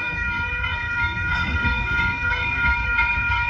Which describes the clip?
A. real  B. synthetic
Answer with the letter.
B